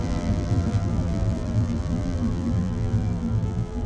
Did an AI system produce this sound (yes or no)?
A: yes